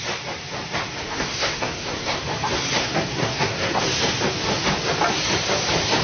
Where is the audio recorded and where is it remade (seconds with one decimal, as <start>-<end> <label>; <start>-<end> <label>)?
0.0-0.9 recorded; 0.9-2.2 remade; 2.2-2.8 recorded; 2.8-3.8 remade; 3.8-6.0 recorded